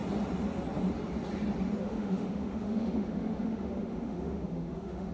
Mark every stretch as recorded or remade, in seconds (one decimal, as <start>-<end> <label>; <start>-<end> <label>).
0.0-1.8 recorded; 1.8-5.1 remade